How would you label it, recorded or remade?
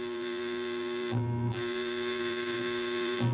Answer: remade